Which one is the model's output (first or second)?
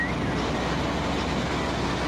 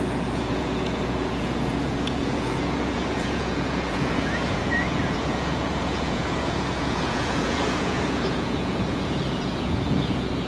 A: second